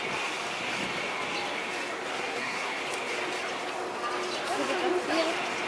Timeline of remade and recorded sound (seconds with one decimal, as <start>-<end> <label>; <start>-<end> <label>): 0.0-2.1 recorded; 2.1-2.8 remade; 2.8-5.7 recorded